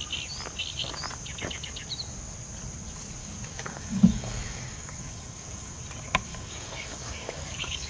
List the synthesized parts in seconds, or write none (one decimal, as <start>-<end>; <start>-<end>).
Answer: 3.2-5.8; 6.3-7.9